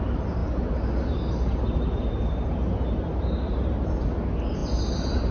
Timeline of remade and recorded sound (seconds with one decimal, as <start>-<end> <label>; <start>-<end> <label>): 0.0-5.3 recorded